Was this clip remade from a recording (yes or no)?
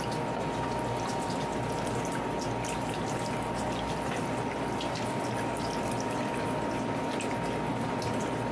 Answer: no